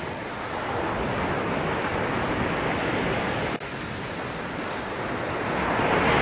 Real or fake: real